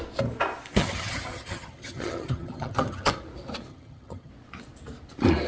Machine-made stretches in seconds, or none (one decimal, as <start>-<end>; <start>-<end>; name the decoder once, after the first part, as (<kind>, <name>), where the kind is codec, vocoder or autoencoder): 0.8-3.1 (vocoder, HiFi-GAN); 3.7-4.3